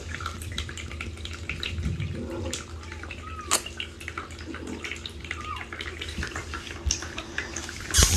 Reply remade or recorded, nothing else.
recorded